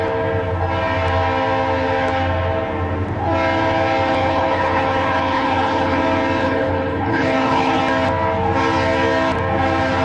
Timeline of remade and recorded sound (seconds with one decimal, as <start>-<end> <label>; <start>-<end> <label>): 0.0-4.2 recorded; 4.2-6.0 remade; 6.0-6.4 recorded; 6.4-7.8 remade; 7.8-10.0 recorded